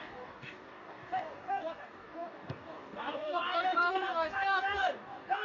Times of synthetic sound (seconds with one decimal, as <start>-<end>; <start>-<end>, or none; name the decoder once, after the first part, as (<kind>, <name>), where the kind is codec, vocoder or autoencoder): 0.0-5.4 (codec, DAC)